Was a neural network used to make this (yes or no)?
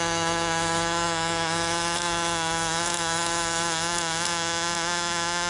yes